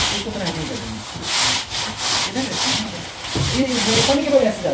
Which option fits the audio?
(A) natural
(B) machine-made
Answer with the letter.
B